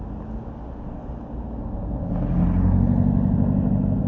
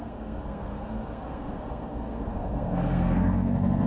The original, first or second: first